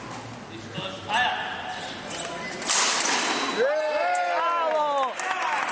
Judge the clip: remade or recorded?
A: recorded